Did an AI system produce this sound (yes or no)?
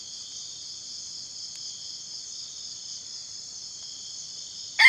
yes